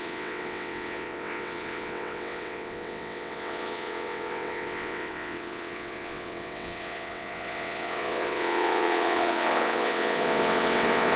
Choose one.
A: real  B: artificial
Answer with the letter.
B